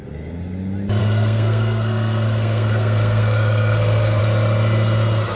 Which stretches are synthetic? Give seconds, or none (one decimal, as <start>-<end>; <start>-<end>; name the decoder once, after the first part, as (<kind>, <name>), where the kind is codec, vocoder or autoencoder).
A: 1.0-4.2 (codec, SNAC)

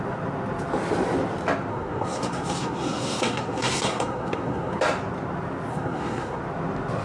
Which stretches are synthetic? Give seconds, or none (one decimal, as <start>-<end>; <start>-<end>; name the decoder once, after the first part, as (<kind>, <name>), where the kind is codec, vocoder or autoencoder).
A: 1.7-4.8 (codec, SNAC); 5.7-6.4

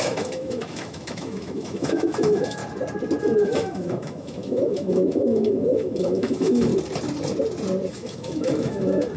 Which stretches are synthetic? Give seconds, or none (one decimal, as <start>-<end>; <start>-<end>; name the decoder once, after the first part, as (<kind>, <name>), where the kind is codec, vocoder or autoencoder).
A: 0.0-2.6 (autoencoder, DAC-VAE); 3.2-6.7; 7.9-9.2

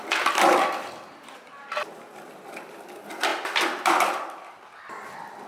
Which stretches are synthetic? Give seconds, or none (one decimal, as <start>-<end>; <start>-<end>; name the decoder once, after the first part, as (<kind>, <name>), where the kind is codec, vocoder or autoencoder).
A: 0.0-5.5 (vocoder, BigVGAN v2)

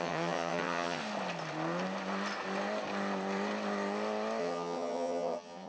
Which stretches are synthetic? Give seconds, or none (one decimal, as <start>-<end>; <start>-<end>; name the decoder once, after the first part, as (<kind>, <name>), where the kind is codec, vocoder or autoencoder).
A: 0.0-1.0 (vocoder, HiFi-GAN); 4.4-5.7

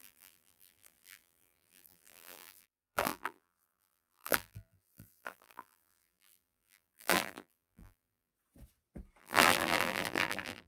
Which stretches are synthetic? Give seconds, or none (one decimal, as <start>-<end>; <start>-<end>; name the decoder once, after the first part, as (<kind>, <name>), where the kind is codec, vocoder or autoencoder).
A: 0.0-8.3 (vocoder, BigVGAN v2); 9.2-10.7

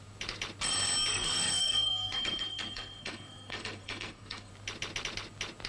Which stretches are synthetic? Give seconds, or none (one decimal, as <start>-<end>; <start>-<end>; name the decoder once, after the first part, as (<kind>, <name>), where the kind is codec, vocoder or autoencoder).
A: 1.1-4.5 (codec, SNAC)